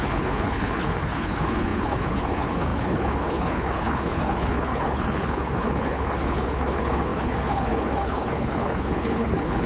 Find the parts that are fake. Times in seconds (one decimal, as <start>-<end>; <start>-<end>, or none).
0.0-9.7